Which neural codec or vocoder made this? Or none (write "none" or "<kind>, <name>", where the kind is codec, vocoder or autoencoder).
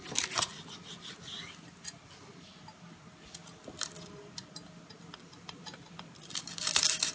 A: none